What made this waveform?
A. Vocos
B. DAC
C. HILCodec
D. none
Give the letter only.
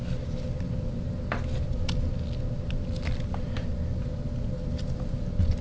D